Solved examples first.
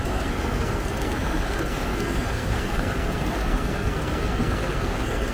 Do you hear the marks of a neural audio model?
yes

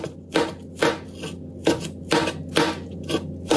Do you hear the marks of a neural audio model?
no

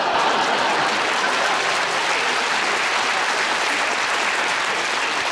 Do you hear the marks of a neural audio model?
no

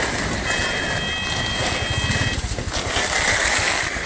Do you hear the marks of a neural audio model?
no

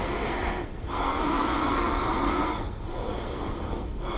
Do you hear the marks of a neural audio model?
yes